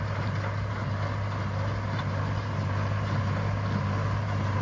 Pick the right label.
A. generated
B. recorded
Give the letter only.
B